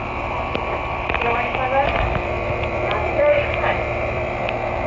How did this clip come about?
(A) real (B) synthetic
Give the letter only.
B